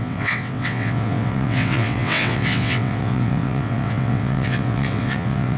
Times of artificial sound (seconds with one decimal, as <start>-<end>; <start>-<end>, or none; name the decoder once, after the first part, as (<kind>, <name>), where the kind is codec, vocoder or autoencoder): 0.0-5.6 (vocoder, WaveNeXt)